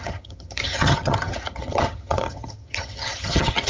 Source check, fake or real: fake